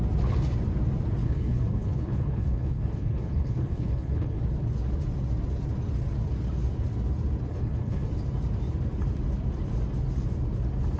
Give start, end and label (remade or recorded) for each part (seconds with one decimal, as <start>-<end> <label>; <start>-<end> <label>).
0.0-1.2 recorded; 1.2-4.4 remade; 4.4-7.5 recorded; 7.5-8.1 remade; 8.1-11.0 recorded

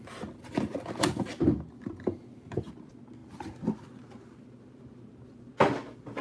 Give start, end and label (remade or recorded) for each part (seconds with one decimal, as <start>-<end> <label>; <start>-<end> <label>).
0.0-6.2 recorded

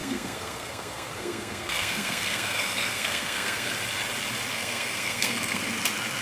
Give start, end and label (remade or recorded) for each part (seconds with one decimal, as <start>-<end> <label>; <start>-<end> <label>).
0.0-3.7 remade; 3.7-4.5 recorded; 4.5-5.6 remade; 5.6-6.2 recorded